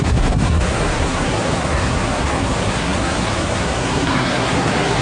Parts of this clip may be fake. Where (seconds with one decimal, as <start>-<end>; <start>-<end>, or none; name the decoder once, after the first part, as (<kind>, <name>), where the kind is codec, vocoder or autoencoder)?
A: 0.0-5.0 (codec, SNAC)